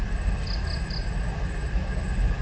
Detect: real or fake real